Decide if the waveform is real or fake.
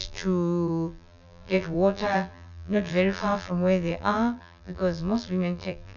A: fake